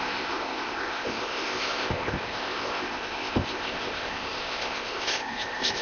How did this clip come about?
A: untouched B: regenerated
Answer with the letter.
B